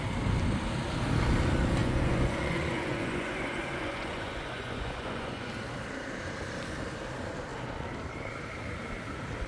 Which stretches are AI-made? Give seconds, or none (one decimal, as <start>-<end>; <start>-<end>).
1.8-5.5